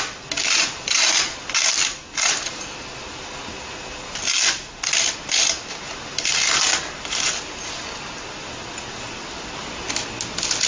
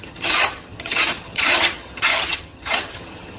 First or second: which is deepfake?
second